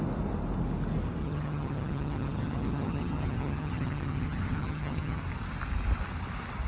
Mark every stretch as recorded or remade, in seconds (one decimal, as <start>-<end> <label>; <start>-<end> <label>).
0.0-1.2 recorded; 1.2-5.2 remade; 5.2-6.7 recorded